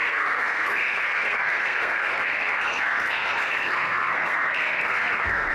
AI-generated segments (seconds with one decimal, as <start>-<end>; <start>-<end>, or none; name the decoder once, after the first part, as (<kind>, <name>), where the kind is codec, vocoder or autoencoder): 0.0-5.5 (codec, SNAC)